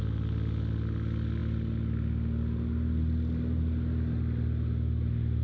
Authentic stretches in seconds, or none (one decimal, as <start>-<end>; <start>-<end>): 0.0-5.4